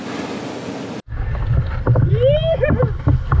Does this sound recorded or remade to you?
recorded